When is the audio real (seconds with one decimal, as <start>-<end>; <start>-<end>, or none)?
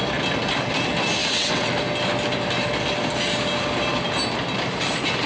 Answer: 0.0-1.2; 1.7-5.3